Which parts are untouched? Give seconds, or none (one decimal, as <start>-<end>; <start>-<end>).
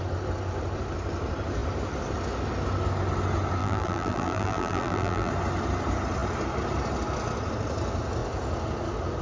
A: 0.0-3.6; 5.3-9.2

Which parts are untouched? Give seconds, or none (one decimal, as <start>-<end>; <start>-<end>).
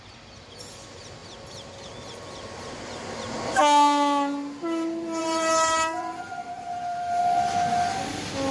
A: 0.0-5.2; 7.2-8.5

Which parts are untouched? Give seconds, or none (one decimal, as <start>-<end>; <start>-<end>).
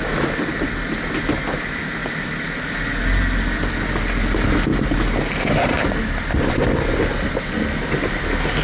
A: 0.0-8.6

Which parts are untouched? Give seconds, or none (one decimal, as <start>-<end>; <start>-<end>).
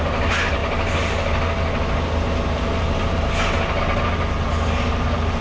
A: 0.0-5.4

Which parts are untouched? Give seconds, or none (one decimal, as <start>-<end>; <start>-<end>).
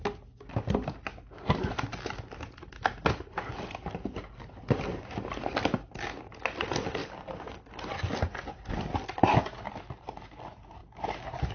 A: 0.0-11.5